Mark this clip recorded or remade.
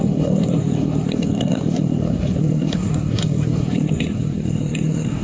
remade